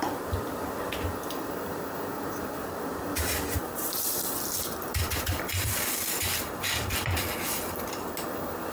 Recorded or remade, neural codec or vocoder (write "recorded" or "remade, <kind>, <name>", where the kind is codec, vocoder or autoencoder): remade, vocoder, BigVGAN v2